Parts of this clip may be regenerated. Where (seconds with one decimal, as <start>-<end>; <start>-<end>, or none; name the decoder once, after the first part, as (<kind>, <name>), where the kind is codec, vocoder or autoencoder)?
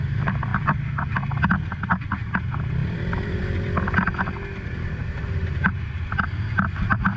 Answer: 2.8-3.4 (vocoder, BigVGAN v2); 5.0-6.1